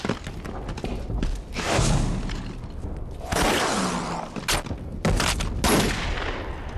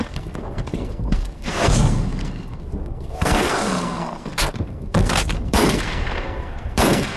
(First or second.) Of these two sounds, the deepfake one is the second